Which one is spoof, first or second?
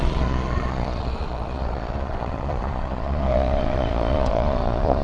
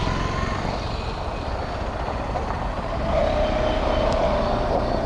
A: first